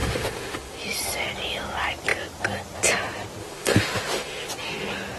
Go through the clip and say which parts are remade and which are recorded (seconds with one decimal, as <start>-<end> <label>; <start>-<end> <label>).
0.0-0.8 remade; 0.8-3.4 recorded; 3.4-4.5 remade; 4.5-5.2 recorded